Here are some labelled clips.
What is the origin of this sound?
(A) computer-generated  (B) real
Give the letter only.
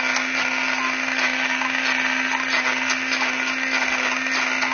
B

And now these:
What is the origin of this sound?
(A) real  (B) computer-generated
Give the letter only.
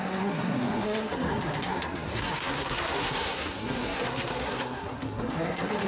B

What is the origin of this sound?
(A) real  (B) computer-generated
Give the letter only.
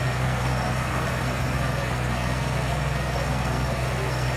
B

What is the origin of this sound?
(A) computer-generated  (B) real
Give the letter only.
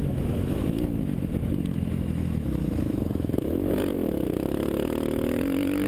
A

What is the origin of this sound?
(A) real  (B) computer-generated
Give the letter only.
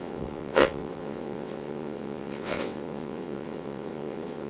B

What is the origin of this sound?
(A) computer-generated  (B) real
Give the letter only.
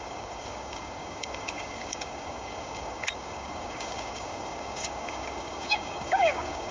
A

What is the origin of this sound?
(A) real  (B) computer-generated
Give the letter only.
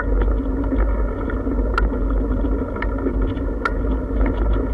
A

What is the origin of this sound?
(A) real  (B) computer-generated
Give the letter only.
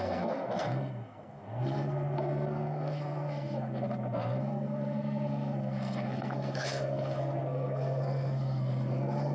B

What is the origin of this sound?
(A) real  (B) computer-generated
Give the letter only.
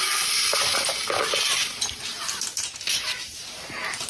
A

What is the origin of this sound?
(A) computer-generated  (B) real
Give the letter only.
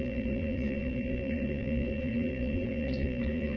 A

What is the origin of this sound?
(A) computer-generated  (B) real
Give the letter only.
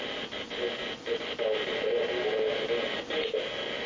B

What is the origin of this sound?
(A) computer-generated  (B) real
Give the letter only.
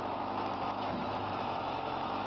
A